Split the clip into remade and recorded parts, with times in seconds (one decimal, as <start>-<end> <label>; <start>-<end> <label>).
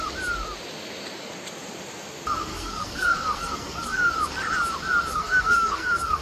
0.0-2.5 recorded; 2.5-4.1 remade; 4.1-5.1 recorded; 5.1-6.2 remade